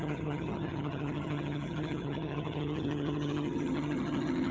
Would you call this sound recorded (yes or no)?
no